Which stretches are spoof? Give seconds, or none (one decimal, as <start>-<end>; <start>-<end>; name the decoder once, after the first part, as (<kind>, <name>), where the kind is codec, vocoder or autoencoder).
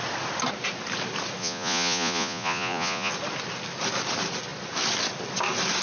1.4-3.1 (vocoder, Vocos)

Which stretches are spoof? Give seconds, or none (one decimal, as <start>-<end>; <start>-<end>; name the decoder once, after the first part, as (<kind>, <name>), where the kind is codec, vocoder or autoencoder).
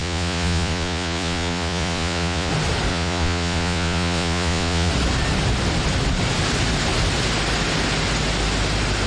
0.0-2.5 (vocoder, Vocos); 2.9-4.9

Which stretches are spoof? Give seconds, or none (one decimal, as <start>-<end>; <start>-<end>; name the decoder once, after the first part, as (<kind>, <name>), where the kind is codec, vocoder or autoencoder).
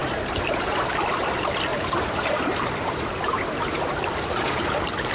0.0-0.9 (vocoder, BigVGAN v2); 1.7-5.1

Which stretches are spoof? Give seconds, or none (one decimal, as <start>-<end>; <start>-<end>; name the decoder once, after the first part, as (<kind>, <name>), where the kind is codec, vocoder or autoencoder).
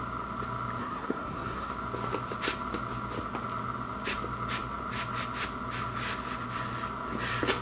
0.8-1.7 (codec, SNAC)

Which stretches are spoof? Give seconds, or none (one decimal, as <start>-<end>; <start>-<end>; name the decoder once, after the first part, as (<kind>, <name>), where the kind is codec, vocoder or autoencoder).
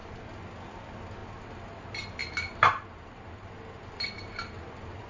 2.2-2.8 (vocoder, BigVGAN v2)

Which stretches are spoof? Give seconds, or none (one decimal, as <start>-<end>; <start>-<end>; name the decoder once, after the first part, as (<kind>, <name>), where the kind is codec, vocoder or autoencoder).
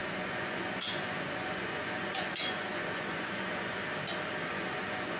0.0-3.8 (vocoder, Vocos); 4.5-5.2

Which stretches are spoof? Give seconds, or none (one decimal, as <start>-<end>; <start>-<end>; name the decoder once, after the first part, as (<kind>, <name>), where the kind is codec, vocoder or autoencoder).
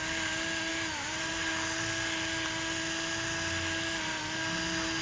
0.7-1.3 (vocoder, BigVGAN v2)